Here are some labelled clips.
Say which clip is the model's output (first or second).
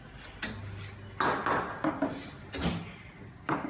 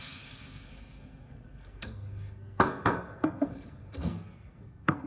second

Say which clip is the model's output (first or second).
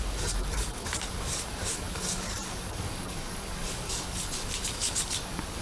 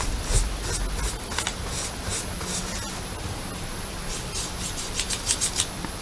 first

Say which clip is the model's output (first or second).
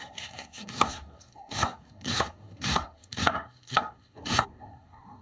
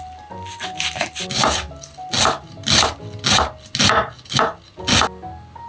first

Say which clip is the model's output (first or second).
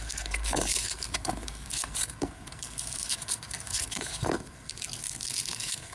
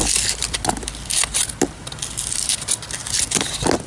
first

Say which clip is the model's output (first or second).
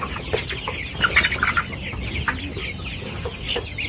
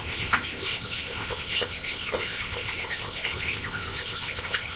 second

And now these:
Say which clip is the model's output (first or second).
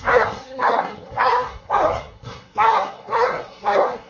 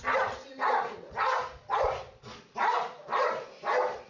first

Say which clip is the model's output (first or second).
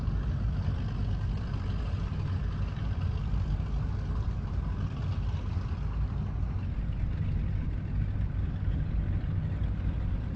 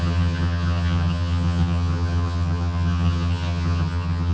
second